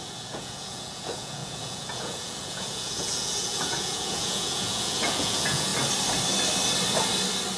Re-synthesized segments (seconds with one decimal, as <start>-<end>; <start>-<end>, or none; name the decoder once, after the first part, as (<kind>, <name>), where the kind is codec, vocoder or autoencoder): 0.0-5.7 (vocoder, Vocos)